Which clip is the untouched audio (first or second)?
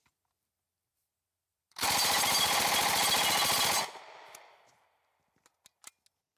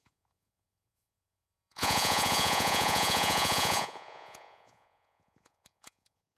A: first